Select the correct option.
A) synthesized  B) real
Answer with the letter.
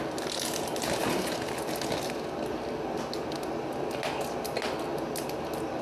B